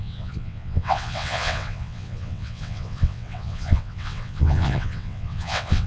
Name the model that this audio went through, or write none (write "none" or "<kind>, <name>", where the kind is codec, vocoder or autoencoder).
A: vocoder, WaveNeXt